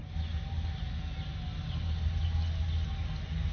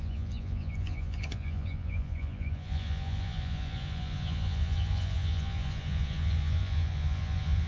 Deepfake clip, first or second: second